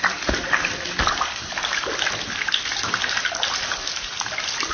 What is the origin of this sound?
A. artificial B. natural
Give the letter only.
B